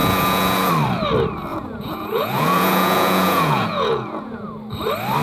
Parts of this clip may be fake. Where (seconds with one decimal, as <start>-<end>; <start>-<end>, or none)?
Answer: 0.0-0.7; 1.5-4.5